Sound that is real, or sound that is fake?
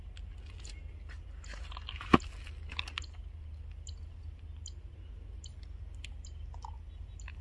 real